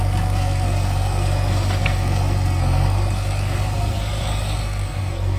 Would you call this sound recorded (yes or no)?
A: no